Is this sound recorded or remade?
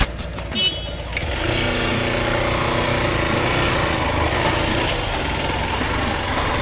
recorded